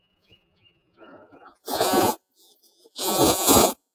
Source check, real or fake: fake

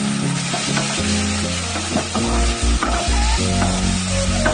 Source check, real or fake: real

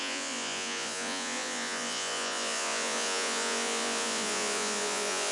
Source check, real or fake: fake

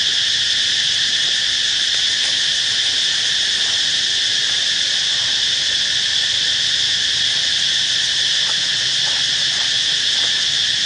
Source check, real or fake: real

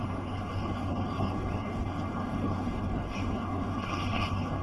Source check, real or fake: fake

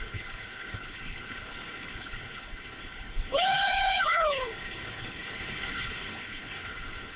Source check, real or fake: fake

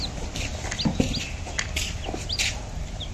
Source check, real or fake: real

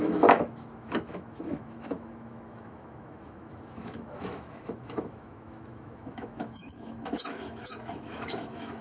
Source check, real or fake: fake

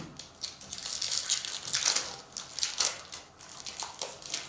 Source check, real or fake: real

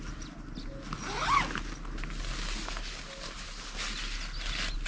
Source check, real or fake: real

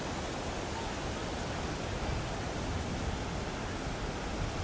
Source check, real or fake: real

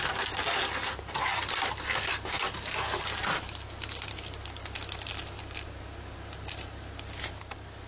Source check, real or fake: real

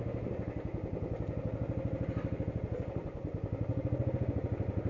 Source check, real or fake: real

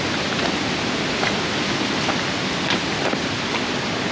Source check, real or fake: real